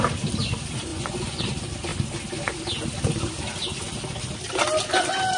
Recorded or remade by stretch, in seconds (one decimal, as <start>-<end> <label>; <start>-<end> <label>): 0.0-0.9 recorded; 0.9-1.4 remade; 1.4-5.4 recorded